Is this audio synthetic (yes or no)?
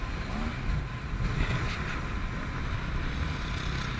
no